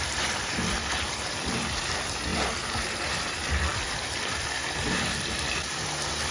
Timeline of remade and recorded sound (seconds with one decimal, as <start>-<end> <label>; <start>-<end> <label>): 0.0-6.3 remade